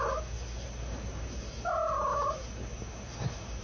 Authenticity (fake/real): real